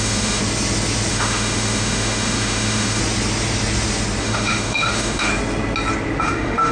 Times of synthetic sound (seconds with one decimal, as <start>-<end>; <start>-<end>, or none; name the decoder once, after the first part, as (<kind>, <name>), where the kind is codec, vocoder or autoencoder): 0.0-0.4 (autoencoder, DAC-VAE); 1.1-3.0; 4.2-5.3; 6.2-6.7